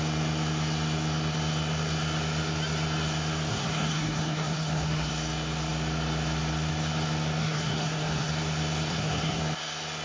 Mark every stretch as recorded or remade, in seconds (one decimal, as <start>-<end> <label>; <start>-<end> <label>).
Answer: 0.0-3.5 recorded; 3.5-5.1 remade; 5.1-7.4 recorded; 7.4-8.3 remade; 8.3-8.9 recorded; 8.9-9.4 remade; 9.4-10.0 recorded